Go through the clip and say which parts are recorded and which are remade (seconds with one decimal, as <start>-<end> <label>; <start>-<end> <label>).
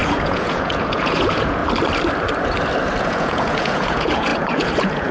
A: 0.0-1.6 remade; 1.6-3.0 recorded; 3.0-5.1 remade